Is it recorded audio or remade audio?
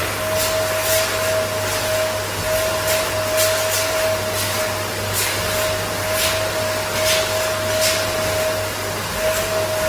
recorded